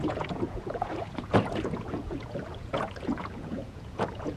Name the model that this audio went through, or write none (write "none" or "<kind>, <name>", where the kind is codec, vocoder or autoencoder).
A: vocoder, Vocos